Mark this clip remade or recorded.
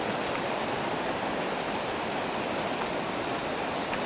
recorded